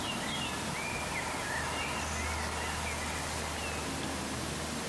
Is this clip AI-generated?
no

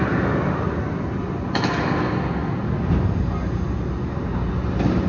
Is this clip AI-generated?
no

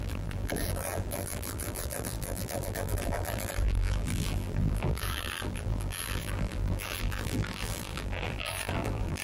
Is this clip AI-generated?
yes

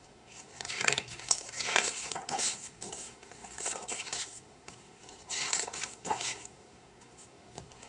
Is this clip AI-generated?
yes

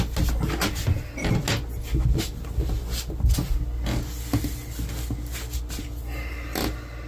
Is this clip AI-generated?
no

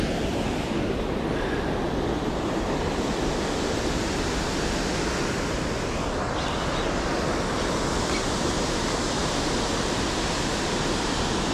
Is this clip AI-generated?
no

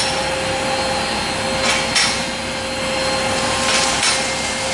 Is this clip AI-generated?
no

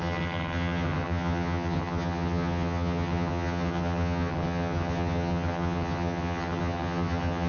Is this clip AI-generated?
yes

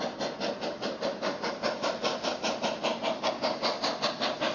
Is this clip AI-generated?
no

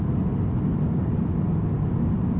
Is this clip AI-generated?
no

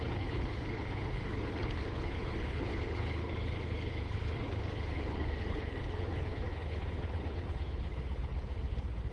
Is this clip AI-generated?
yes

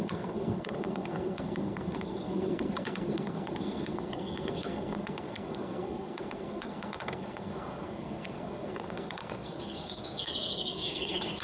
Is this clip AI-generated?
yes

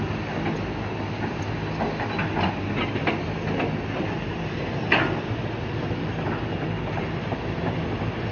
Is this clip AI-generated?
no